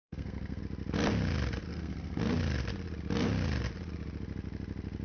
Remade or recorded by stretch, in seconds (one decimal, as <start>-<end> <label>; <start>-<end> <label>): 0.0-0.6 remade; 0.6-1.7 recorded; 1.7-2.2 remade; 2.2-5.0 recorded